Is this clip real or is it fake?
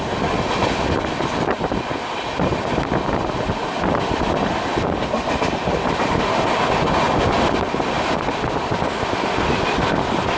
real